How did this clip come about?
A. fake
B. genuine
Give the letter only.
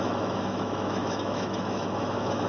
A